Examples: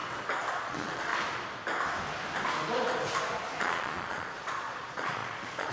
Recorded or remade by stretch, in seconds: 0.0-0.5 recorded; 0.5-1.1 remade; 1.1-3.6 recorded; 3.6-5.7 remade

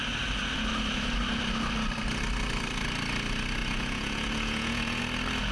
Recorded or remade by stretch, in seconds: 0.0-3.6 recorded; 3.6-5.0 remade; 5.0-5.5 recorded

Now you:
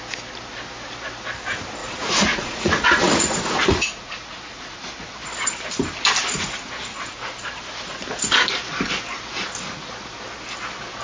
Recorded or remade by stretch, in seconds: 0.0-1.8 recorded; 1.8-4.9 remade; 4.9-6.9 recorded; 6.9-7.6 remade; 7.6-11.0 recorded

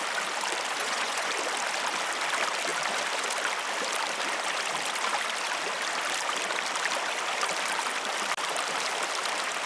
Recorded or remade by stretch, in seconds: 0.0-0.8 recorded; 0.8-1.3 remade; 1.3-9.7 recorded